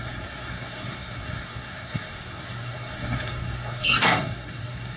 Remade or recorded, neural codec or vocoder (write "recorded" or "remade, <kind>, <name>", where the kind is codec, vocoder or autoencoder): remade, codec, SNAC